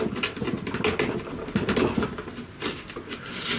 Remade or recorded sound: recorded